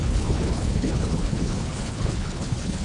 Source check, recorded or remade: remade